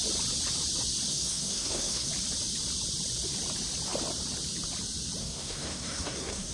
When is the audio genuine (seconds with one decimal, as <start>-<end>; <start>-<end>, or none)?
0.0-1.1; 2.1-5.2